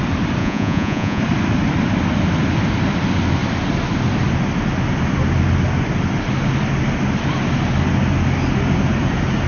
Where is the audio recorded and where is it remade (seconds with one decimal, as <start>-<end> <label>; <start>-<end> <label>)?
0.0-0.4 recorded; 0.4-1.2 remade; 1.2-9.5 recorded